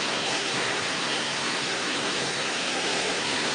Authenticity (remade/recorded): remade